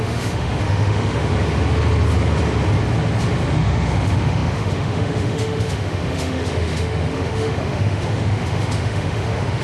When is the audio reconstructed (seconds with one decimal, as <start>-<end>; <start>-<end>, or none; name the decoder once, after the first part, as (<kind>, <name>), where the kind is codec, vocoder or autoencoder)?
0.0-1.3 (autoencoder, DAC-VAE); 3.5-9.6